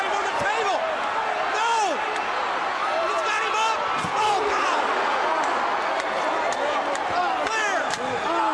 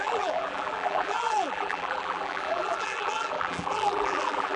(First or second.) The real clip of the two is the first